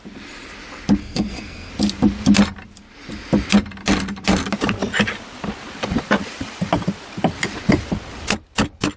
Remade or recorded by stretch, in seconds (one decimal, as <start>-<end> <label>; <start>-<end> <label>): 0.0-1.0 recorded; 1.0-1.7 remade; 1.7-9.0 recorded